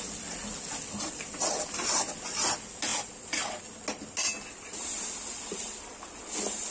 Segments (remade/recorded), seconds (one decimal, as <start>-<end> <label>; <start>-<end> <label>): 0.0-6.7 recorded